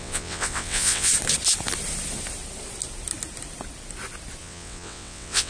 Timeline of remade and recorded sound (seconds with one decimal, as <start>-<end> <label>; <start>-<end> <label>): 0.0-1.1 remade; 1.1-4.4 recorded; 4.4-5.5 remade